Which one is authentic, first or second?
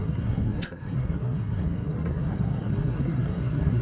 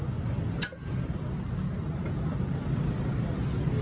second